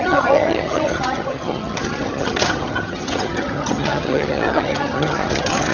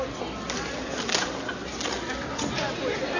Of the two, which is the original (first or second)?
second